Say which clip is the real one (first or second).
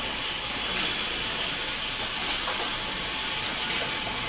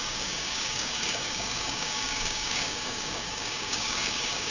first